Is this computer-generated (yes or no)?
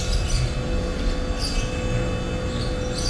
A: no